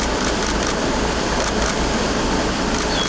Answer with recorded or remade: recorded